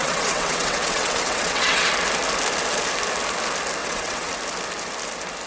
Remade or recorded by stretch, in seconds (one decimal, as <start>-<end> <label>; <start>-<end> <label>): 0.0-1.9 remade; 1.9-3.8 recorded; 3.8-4.3 remade; 4.3-5.5 recorded